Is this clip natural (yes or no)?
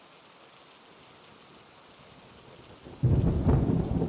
yes